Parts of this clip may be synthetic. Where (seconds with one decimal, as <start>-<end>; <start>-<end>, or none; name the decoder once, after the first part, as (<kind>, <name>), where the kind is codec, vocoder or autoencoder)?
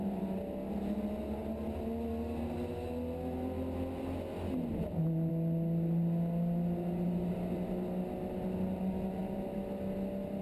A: none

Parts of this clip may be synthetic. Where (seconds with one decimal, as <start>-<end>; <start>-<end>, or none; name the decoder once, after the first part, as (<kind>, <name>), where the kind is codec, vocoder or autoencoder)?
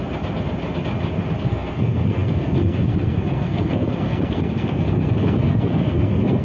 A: 1.4-6.4 (codec, SNAC)